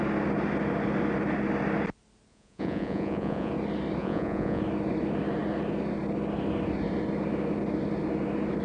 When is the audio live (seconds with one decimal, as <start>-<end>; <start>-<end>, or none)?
0.0-2.3; 3.5-4.0; 4.6-8.6